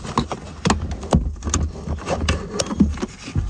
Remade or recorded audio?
recorded